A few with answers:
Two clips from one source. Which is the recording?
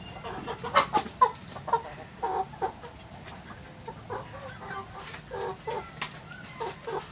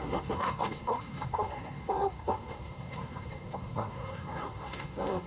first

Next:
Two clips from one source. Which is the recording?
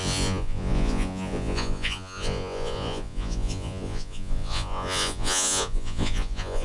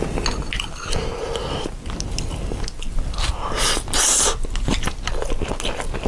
second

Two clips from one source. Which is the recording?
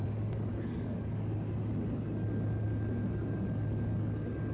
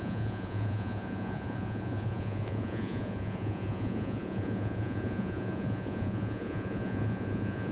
first